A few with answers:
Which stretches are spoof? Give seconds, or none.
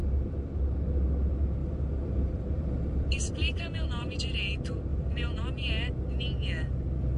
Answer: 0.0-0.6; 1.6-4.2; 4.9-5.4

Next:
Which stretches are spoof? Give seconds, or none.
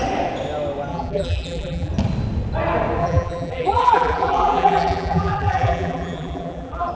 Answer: 0.9-1.9; 3.0-6.9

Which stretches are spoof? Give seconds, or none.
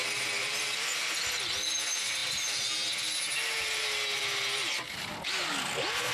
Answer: 0.0-1.2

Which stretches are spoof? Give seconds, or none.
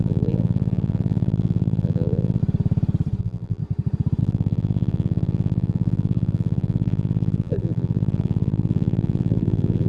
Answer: 0.0-2.4; 3.2-3.6; 4.2-9.9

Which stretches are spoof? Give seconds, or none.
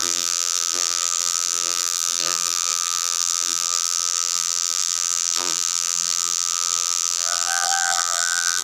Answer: 0.0-8.6